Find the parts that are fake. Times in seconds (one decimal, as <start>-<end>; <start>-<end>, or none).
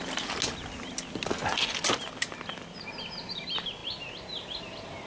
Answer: none